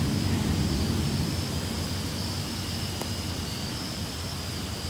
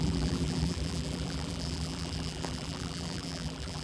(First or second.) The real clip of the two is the first